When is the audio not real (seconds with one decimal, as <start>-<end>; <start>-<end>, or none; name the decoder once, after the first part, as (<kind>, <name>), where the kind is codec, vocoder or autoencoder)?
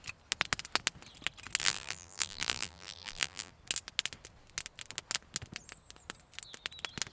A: 1.6-3.5 (vocoder, BigVGAN v2)